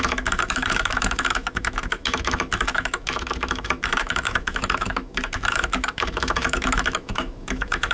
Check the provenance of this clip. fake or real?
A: fake